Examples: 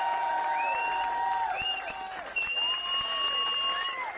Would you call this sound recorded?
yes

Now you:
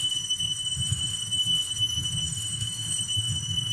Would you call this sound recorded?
no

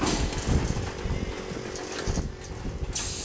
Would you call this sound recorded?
yes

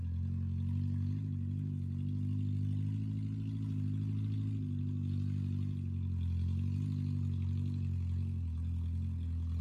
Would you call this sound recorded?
yes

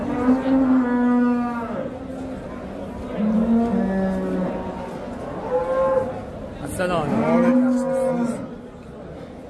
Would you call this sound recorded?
yes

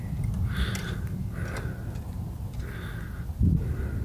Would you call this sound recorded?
yes